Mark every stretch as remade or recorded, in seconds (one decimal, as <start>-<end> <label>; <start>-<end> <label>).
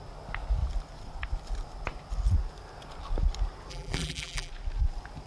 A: 0.0-3.7 recorded; 3.7-4.5 remade; 4.5-5.3 recorded